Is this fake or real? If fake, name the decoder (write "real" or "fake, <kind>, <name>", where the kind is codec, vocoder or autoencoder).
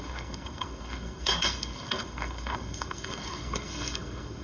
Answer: fake, codec, SNAC